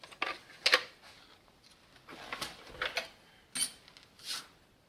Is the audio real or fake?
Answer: real